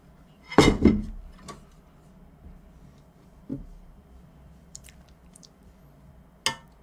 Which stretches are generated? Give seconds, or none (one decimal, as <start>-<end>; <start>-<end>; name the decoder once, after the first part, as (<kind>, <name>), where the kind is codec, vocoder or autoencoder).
0.0-1.1 (vocoder, BigVGAN v2); 3.5-5.8